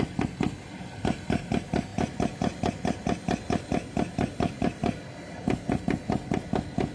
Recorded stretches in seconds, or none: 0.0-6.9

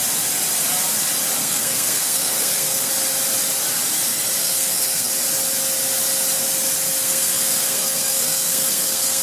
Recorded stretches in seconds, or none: 0.0-1.4; 2.9-4.4; 5.1-7.0

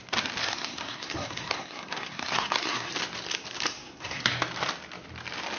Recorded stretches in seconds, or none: 0.0-0.4; 2.9-3.7; 4.3-5.6

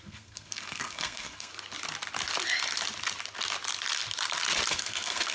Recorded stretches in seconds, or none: 1.5-4.7

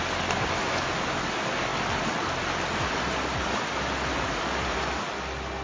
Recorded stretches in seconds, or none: 0.0-5.6

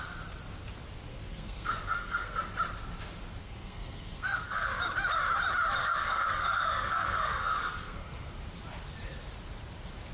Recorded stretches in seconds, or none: 0.0-1.1; 2.4-3.4; 4.7-5.8; 8.3-10.1